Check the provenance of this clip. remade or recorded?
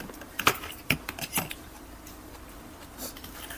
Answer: remade